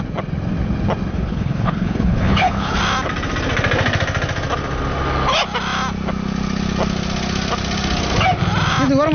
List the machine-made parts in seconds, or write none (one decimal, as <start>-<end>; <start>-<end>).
1.1-2.8